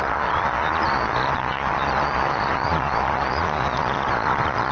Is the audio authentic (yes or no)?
no